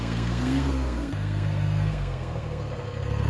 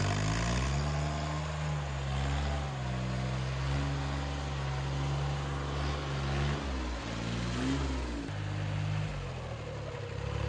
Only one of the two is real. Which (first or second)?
second